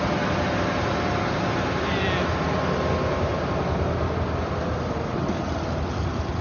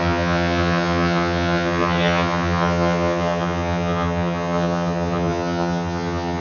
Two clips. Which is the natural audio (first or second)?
first